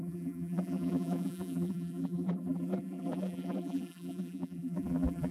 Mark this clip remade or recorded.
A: remade